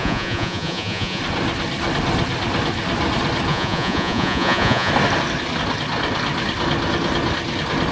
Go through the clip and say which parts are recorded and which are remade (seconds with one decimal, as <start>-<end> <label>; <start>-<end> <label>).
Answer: 0.0-1.2 remade; 1.2-3.5 recorded; 3.5-4.9 remade; 4.9-7.9 recorded

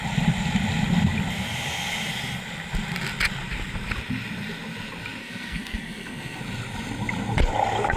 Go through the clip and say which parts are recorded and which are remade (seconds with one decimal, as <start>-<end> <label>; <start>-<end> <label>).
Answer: 0.0-5.2 recorded; 5.2-6.4 remade; 6.4-8.0 recorded

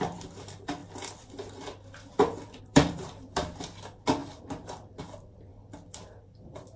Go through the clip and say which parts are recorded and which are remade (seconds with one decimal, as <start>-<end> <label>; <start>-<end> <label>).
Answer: 0.0-0.8 remade; 0.8-2.6 recorded; 2.6-5.5 remade; 5.5-6.2 recorded; 6.2-6.8 remade

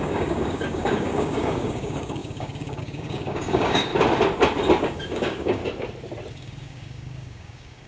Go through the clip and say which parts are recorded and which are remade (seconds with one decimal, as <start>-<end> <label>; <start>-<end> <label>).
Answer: 0.0-3.9 remade; 3.9-4.8 recorded; 4.8-5.6 remade; 5.6-6.3 recorded; 6.3-7.9 remade

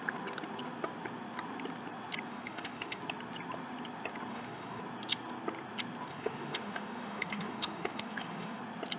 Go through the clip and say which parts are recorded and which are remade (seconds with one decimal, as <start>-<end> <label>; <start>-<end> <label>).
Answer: 0.0-2.3 recorded; 2.3-3.0 remade; 3.0-4.3 recorded; 4.3-4.8 remade; 4.8-6.1 recorded; 6.1-8.6 remade; 8.6-9.0 recorded

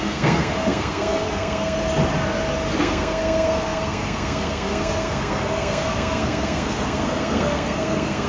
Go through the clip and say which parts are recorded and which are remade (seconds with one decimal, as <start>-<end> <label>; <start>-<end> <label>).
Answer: 0.0-1.8 remade; 1.8-2.8 recorded; 2.8-8.3 remade